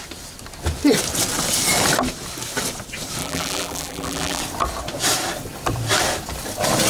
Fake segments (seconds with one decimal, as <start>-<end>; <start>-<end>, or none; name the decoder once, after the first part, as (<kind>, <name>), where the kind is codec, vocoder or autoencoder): 3.2-4.4 (vocoder, BigVGAN v2)